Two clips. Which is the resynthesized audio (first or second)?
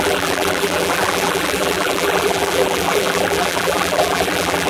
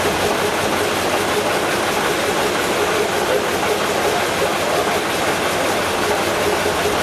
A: first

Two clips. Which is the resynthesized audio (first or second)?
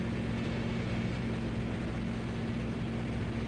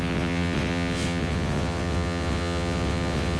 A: second